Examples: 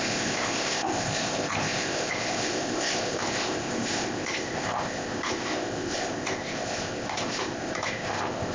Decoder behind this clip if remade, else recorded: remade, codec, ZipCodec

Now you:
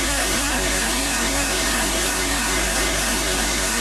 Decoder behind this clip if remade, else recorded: remade, codec, SNAC